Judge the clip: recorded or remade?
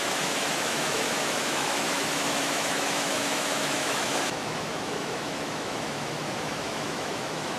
remade